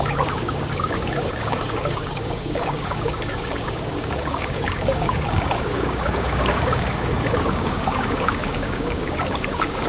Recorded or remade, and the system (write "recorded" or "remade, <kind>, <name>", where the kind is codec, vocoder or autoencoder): remade, codec, DAC